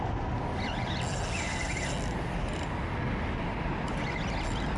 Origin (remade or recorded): recorded